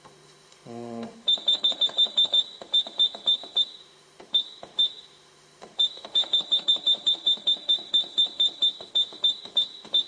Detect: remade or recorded remade